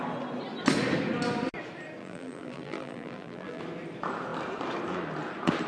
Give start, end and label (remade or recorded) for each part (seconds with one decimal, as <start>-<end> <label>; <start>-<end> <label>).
0.0-2.0 recorded; 2.0-3.6 remade; 3.6-5.7 recorded